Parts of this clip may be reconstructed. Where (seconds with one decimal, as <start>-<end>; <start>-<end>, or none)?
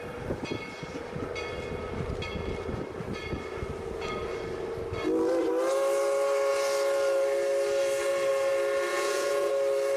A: 8.9-9.5